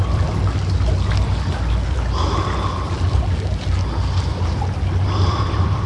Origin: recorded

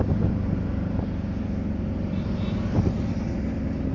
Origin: recorded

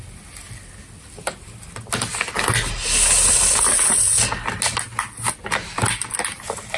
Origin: recorded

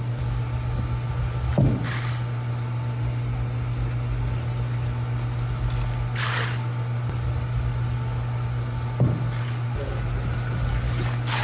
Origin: recorded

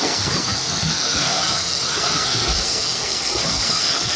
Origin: remade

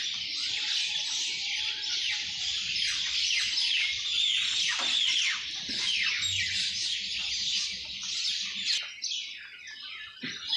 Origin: recorded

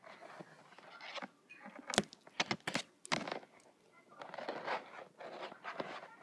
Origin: recorded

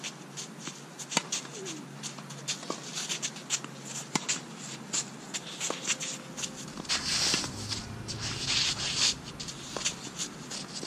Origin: recorded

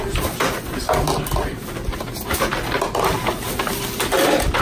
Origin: recorded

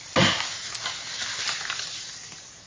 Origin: recorded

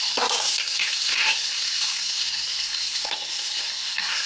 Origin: remade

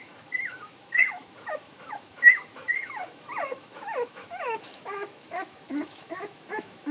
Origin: remade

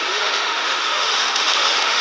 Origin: remade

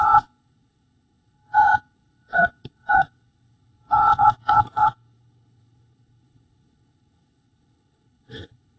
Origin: remade